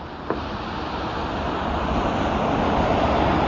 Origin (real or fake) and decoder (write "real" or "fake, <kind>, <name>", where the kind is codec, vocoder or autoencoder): fake, vocoder, BigVGAN v2